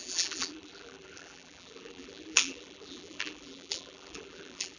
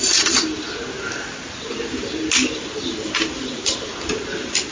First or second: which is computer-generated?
first